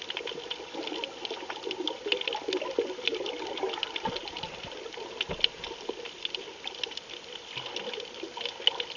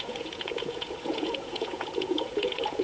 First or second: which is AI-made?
second